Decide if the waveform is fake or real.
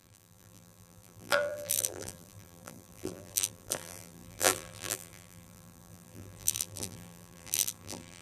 fake